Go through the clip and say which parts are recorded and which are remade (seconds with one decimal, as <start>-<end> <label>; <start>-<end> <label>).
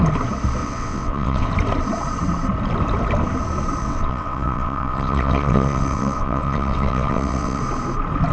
0.0-0.6 recorded; 0.6-1.5 remade; 1.5-3.8 recorded; 3.8-7.6 remade; 7.6-8.3 recorded